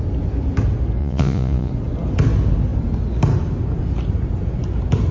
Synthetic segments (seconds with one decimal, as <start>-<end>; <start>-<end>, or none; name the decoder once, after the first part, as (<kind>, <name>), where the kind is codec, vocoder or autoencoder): 1.0-1.7 (vocoder, Vocos)